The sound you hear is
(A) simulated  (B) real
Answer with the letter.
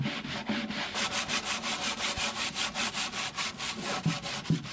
B